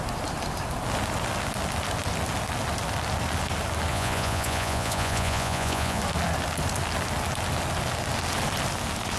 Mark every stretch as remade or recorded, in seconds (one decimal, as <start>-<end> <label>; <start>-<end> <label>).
0.0-3.9 recorded; 3.9-6.0 remade; 6.0-9.2 recorded